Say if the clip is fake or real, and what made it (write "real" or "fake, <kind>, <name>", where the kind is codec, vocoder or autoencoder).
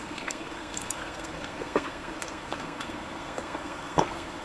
fake, codec, SNAC